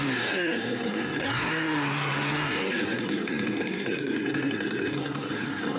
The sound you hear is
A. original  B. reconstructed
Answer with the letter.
B